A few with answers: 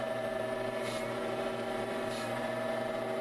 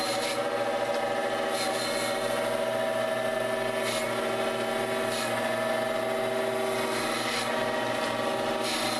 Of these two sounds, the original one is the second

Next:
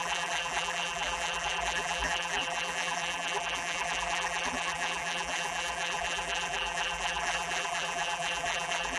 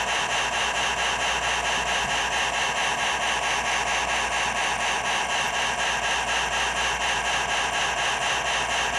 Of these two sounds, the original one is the second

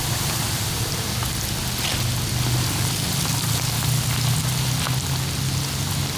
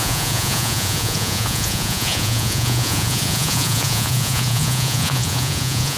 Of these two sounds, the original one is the first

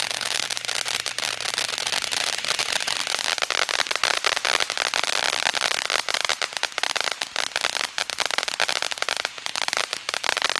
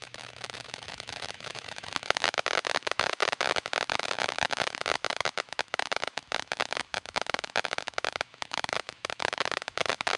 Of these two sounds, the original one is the first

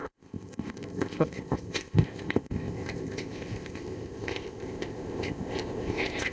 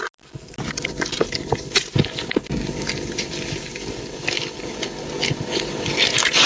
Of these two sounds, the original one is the second